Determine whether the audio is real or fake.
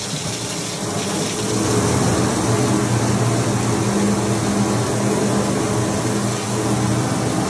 real